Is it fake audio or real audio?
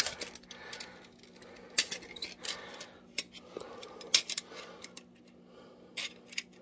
real